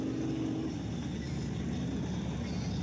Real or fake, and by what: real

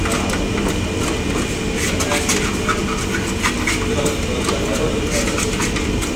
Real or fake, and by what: real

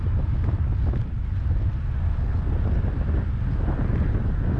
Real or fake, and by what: real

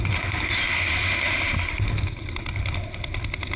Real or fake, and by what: real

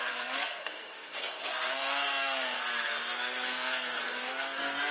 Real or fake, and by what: fake, codec, SNAC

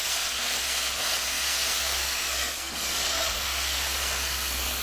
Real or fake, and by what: fake, codec, SNAC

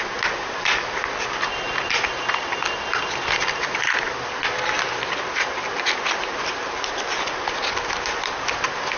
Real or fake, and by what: real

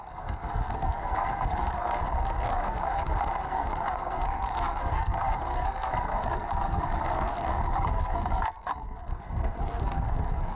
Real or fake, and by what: fake, codec, SNAC